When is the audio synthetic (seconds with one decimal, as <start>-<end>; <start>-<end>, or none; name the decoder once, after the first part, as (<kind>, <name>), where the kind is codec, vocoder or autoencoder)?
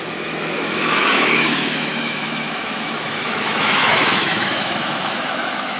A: 0.0-5.8 (autoencoder, DAC-VAE)